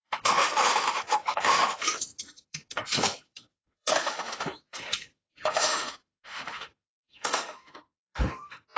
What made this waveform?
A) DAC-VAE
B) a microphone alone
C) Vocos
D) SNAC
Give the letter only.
A